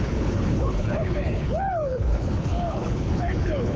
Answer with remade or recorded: remade